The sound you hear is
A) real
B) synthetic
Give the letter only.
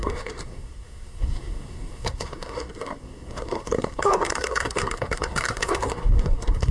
B